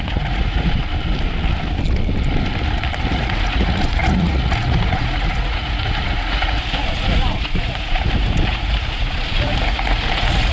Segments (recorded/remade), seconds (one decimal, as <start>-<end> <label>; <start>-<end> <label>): 0.0-0.8 remade; 0.8-3.0 recorded; 3.0-10.5 remade